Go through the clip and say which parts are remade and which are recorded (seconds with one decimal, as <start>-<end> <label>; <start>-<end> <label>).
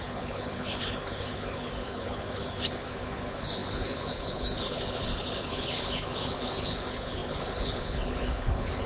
0.0-8.9 remade